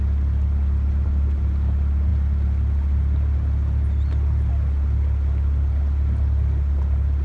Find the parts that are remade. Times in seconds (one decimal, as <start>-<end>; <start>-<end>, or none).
none